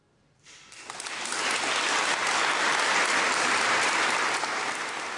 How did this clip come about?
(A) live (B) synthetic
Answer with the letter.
A